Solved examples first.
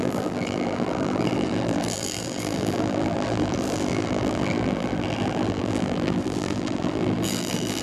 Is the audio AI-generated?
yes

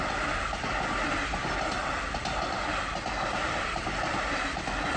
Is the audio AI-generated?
no